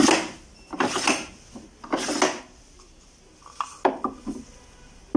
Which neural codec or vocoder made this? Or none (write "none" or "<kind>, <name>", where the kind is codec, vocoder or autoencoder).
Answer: none